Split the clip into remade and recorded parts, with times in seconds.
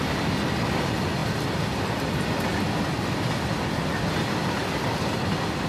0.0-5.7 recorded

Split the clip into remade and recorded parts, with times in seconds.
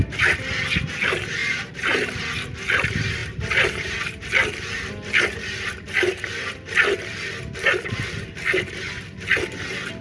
0.0-1.4 recorded; 1.4-2.2 remade; 2.2-3.2 recorded; 3.2-3.9 remade; 3.9-10.0 recorded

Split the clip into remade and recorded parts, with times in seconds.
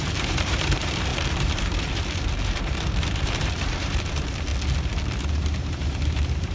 0.0-4.5 remade; 4.5-5.2 recorded; 5.2-6.5 remade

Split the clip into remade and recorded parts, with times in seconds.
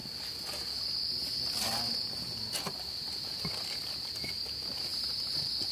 0.0-4.9 recorded; 4.9-5.7 remade